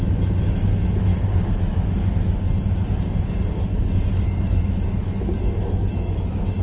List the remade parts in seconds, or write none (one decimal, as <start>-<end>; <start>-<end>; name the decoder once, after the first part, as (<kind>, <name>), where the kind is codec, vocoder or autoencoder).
0.0-1.1 (autoencoder, DAC-VAE); 1.6-2.0; 4.1-6.6

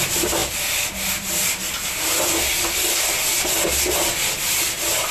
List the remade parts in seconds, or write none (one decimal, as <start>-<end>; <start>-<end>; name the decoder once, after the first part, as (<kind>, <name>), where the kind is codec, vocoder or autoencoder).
none

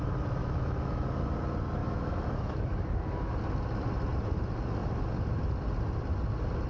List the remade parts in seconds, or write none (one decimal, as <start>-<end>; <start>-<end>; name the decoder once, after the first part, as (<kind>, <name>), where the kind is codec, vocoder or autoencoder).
0.4-1.2 (autoencoder, DAC-VAE); 1.8-3.3

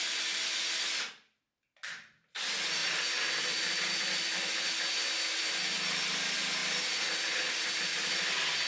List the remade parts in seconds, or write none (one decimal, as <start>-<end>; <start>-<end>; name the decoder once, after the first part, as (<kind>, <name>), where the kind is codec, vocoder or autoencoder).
none